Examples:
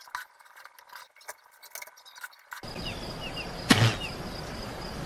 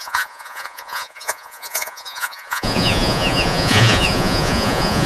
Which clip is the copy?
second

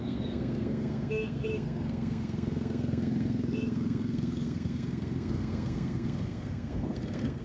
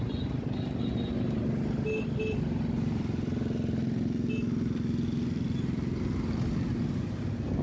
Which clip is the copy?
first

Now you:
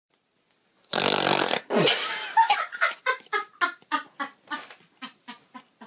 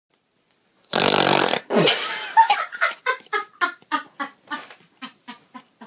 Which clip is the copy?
second